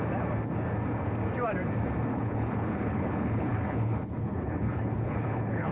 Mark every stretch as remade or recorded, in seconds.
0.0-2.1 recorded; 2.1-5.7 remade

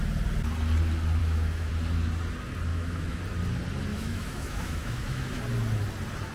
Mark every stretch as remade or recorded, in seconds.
0.0-1.2 recorded; 1.2-1.7 remade; 1.7-2.7 recorded; 2.7-3.2 remade; 3.2-3.9 recorded; 3.9-5.4 remade; 5.4-6.3 recorded